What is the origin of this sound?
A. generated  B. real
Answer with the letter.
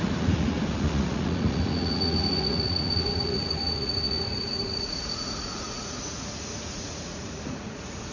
A